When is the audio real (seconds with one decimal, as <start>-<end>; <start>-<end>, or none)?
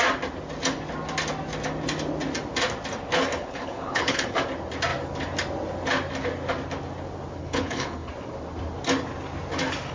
0.0-3.4; 4.4-7.4; 8.1-9.9